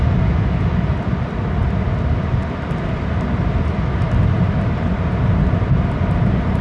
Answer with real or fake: real